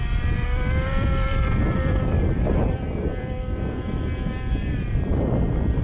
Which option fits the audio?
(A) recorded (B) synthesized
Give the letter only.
B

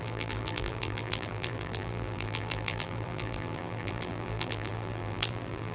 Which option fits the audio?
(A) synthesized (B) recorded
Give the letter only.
A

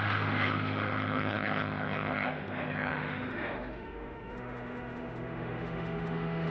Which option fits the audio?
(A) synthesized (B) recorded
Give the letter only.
A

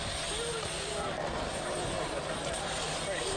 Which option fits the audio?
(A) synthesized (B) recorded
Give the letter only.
B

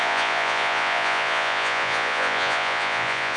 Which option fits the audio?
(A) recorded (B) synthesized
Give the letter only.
B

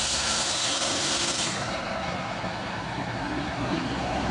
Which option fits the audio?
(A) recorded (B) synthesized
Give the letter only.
B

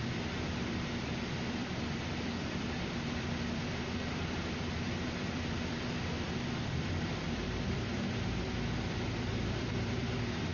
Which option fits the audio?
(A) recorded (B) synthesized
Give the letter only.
B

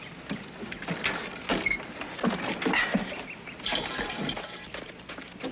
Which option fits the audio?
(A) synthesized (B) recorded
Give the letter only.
B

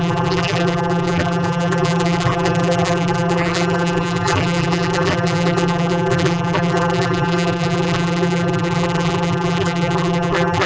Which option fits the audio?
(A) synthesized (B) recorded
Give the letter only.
A